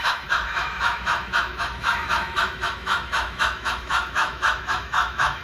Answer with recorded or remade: remade